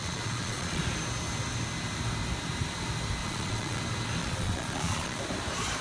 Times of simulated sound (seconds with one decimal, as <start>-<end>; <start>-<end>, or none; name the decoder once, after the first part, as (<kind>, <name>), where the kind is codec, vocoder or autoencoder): 0.0-0.8 (vocoder, Vocos); 3.2-3.8; 4.2-5.2